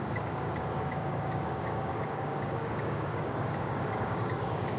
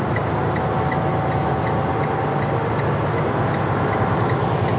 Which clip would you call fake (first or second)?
first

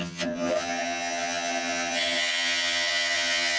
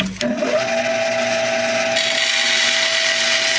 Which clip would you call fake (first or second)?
first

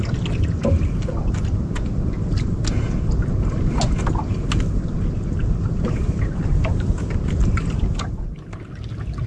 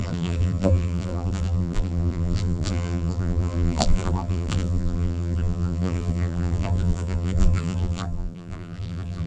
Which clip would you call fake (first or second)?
second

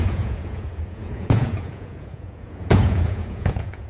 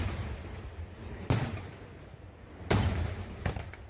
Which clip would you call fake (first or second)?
first